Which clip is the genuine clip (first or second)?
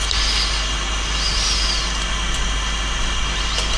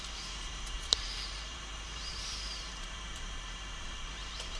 first